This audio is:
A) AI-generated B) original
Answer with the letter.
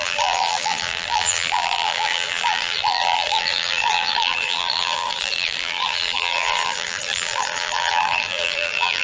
A